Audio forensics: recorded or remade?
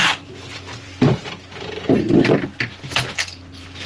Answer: remade